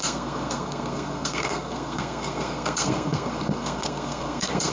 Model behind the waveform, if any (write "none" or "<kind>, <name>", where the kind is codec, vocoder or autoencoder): codec, SNAC